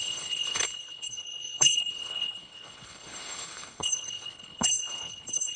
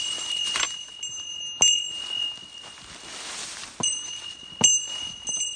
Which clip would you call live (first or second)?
second